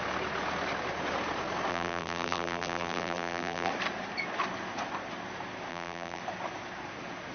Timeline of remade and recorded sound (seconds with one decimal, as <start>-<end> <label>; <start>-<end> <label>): 0.0-1.7 recorded; 1.7-3.7 remade; 3.7-5.7 recorded; 5.7-6.2 remade; 6.2-7.3 recorded